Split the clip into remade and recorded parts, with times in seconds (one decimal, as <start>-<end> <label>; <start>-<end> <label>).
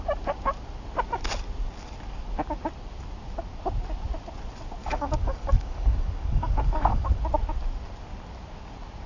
0.0-4.8 recorded; 4.8-7.2 remade; 7.2-9.1 recorded